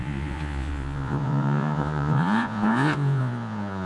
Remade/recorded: remade